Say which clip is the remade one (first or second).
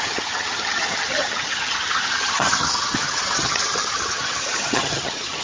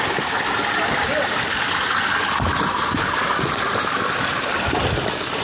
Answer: first